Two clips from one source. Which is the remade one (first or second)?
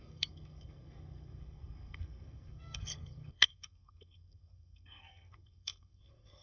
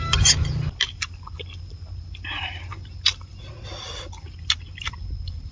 first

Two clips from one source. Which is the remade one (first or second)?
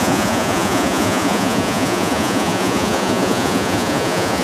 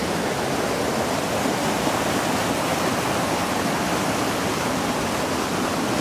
first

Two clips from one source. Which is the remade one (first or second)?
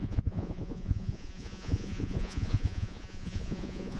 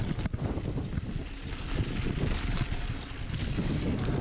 first